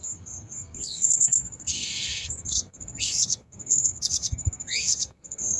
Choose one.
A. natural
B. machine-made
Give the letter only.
B